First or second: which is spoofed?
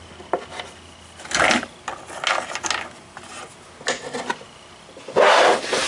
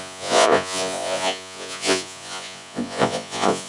second